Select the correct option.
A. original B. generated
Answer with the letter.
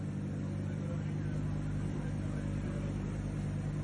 A